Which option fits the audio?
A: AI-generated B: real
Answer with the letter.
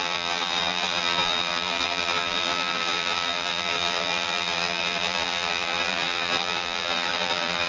A